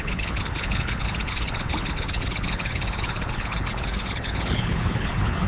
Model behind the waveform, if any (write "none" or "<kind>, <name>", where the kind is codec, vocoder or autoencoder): codec, HILCodec